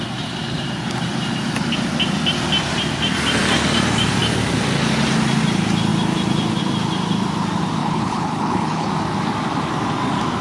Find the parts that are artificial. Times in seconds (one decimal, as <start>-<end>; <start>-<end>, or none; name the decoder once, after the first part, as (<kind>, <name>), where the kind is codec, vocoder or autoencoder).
7.8-8.9 (codec, HILCodec)